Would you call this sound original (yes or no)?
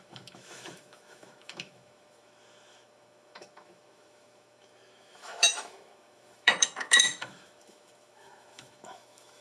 no